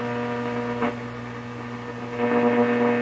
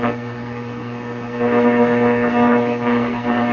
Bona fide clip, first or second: first